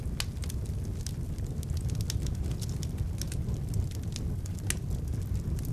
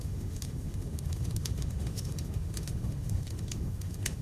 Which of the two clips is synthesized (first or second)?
second